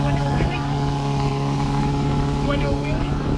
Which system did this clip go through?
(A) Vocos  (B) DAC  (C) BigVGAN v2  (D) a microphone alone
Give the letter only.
B